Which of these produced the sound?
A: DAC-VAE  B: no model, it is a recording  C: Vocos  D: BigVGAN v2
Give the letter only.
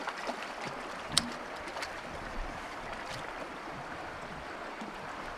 D